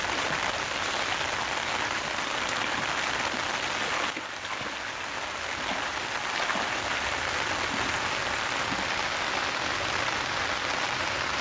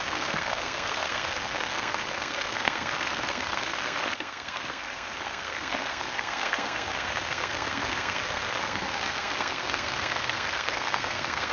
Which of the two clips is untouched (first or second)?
first